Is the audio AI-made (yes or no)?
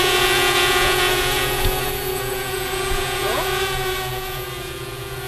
yes